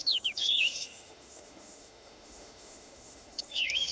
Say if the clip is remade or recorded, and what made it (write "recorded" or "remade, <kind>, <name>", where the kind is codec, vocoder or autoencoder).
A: remade, autoencoder, DAC-VAE